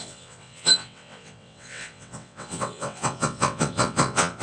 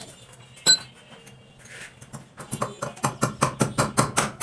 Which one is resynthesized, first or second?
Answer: first